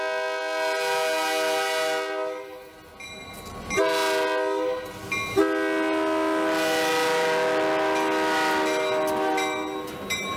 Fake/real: real